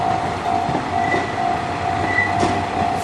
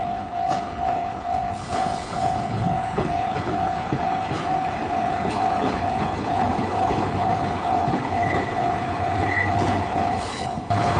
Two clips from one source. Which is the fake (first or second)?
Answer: second